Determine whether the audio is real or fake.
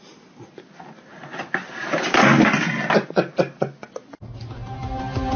real